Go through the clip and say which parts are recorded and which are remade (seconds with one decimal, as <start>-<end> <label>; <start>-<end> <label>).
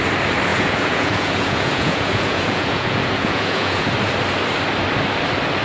0.0-0.5 recorded; 0.5-3.9 remade; 3.9-5.6 recorded